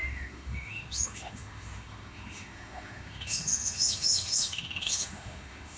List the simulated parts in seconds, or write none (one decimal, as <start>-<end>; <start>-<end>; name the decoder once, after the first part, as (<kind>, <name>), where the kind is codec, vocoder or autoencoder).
0.0-5.8 (autoencoder, DAC-VAE)